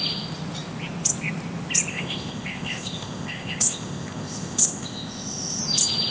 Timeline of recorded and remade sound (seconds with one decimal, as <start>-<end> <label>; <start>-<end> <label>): 0.0-1.9 recorded; 1.9-5.6 remade; 5.6-6.1 recorded